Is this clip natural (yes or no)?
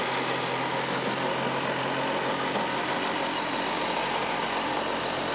yes